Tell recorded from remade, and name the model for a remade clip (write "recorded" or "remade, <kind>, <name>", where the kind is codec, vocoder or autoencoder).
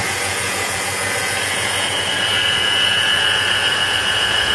remade, vocoder, Vocos